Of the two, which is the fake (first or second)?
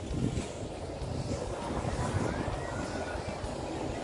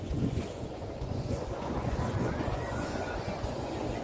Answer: second